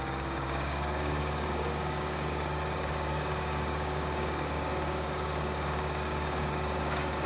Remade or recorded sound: remade